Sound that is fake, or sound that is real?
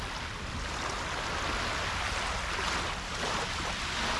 real